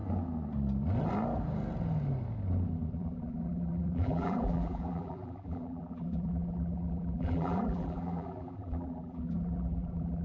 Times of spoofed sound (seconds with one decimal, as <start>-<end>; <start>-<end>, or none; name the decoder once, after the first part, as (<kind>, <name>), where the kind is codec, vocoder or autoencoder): 2.9-10.2 (vocoder, BigVGAN v2)

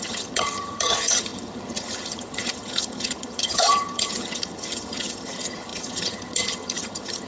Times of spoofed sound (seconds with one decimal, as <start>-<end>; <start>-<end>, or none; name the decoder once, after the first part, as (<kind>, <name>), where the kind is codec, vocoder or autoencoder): 0.0-7.3 (vocoder, HiFi-GAN)

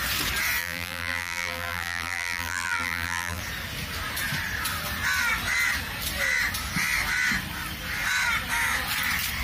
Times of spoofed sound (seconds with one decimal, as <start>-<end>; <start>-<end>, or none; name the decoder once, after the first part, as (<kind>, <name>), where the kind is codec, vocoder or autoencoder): 0.6-3.4 (vocoder, BigVGAN v2)

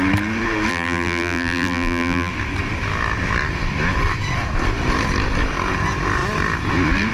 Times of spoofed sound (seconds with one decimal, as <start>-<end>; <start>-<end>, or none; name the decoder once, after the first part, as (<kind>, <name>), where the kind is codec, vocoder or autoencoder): 0.7-2.3 (vocoder, BigVGAN v2)

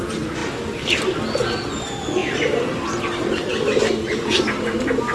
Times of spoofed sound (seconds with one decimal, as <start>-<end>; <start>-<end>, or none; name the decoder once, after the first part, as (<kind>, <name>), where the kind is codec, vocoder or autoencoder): 0.4-1.4 (vocoder, BigVGAN v2); 2.2-3.8